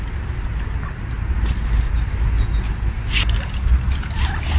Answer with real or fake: real